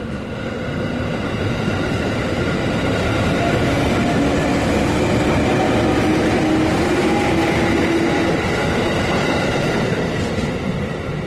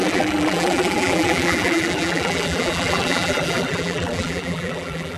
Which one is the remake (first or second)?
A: second